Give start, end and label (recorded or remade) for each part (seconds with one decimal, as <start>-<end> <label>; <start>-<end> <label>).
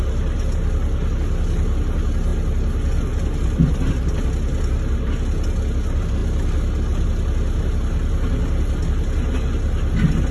0.0-10.3 recorded